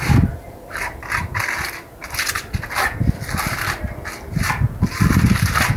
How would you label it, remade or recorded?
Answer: recorded